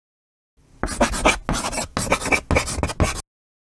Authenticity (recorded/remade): recorded